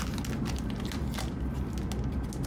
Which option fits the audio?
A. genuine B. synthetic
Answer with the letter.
A